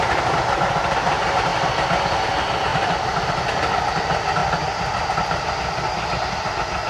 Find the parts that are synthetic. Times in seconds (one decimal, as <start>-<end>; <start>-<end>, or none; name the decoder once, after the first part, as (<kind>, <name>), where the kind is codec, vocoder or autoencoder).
none